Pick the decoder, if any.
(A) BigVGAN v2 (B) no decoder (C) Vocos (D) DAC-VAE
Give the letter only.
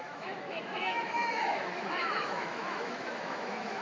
D